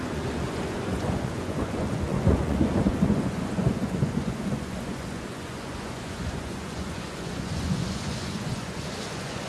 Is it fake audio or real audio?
fake